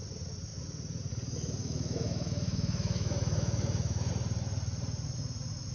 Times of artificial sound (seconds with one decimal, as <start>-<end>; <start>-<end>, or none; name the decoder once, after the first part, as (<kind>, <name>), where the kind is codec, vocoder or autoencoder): 1.6-4.1 (autoencoder, DAC-VAE)